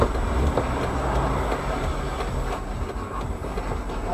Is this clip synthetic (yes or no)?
no